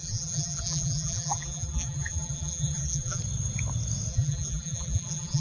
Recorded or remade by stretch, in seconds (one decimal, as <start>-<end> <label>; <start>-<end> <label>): 0.0-3.2 remade; 3.2-4.1 recorded; 4.1-5.4 remade